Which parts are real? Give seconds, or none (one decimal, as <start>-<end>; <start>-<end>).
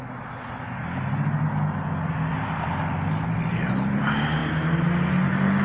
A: 0.0-5.6